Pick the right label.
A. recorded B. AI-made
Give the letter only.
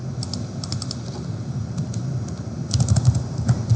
A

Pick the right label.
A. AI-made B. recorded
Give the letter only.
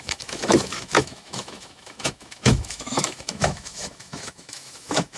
A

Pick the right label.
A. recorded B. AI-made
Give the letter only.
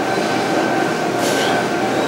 A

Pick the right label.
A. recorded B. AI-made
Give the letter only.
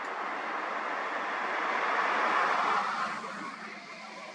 A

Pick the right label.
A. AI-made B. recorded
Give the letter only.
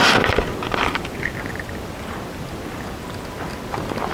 B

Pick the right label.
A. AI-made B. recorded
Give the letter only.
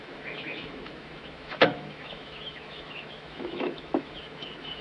A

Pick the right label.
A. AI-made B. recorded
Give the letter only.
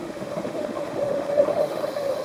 A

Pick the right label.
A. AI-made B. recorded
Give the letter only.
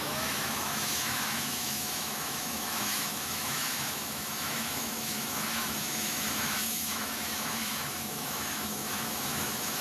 A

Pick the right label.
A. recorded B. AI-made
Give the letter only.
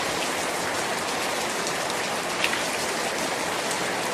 A